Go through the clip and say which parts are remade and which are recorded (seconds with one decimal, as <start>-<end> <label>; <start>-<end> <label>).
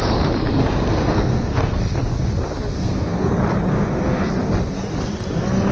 0.0-0.5 recorded; 0.5-1.8 remade; 1.8-2.7 recorded; 2.7-3.3 remade; 3.3-3.7 recorded; 3.7-4.3 remade; 4.3-5.7 recorded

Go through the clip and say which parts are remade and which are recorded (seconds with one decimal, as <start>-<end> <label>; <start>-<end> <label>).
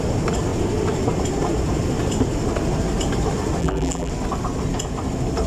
0.0-3.6 recorded; 3.6-4.1 remade; 4.1-5.5 recorded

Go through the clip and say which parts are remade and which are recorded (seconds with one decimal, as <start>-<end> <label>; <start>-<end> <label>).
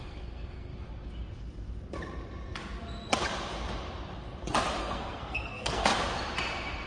0.0-0.7 remade; 0.7-4.8 recorded; 4.8-5.9 remade; 5.9-6.9 recorded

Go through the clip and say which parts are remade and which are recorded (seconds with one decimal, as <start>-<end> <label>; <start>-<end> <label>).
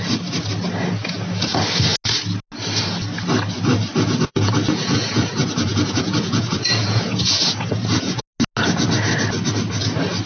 0.0-3.9 recorded; 3.9-8.2 remade; 8.2-10.3 recorded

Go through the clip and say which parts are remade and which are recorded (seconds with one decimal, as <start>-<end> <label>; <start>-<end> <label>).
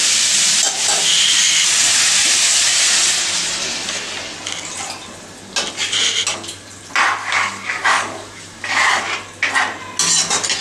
0.0-7.2 recorded; 7.2-9.0 remade; 9.0-10.6 recorded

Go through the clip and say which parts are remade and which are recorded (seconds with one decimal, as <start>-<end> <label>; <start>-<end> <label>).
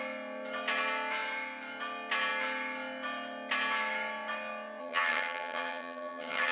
0.0-4.8 recorded; 4.8-6.5 remade